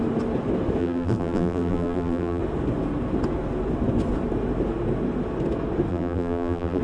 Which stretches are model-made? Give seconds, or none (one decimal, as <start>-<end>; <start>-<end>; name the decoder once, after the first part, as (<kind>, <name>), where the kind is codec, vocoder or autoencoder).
0.8-2.4 (vocoder, BigVGAN v2); 5.9-6.8